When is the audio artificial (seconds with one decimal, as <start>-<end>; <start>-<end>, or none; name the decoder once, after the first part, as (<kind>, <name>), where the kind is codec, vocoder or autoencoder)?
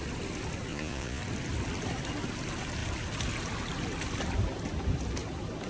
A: 0.7-1.2 (vocoder, Vocos)